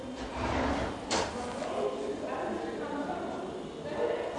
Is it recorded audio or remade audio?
recorded